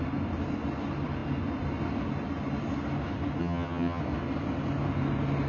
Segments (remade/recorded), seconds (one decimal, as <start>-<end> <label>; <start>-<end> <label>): 0.0-3.4 recorded; 3.4-4.0 remade; 4.0-5.5 recorded

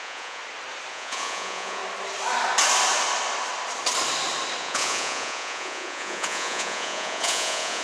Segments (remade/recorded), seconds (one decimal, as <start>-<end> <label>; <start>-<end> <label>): 0.0-0.4 remade; 0.4-0.9 recorded; 0.9-1.8 remade; 1.8-4.6 recorded; 4.6-7.8 remade

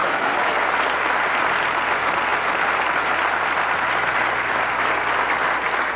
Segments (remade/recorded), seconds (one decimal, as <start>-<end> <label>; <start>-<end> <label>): 0.0-0.5 remade; 0.5-6.0 recorded